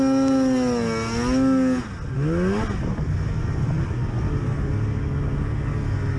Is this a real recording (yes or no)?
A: yes